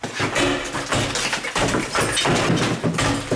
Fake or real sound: real